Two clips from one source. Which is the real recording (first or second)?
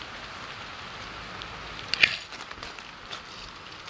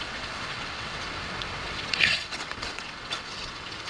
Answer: first